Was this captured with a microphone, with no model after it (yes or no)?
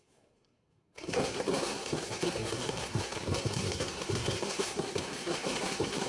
no